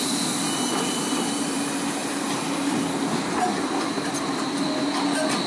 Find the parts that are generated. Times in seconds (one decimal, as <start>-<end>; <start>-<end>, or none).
none